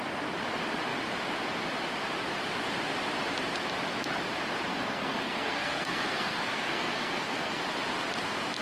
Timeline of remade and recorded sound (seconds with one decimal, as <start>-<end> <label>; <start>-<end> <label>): 0.0-4.7 recorded; 4.7-7.6 remade; 7.6-8.6 recorded